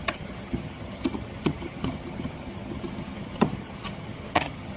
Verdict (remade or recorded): remade